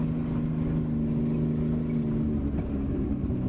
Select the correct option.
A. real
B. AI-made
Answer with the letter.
A